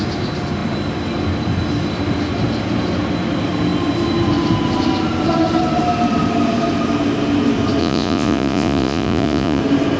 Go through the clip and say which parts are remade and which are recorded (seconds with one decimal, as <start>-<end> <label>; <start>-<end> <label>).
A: 0.0-7.8 recorded; 7.8-9.6 remade; 9.6-10.0 recorded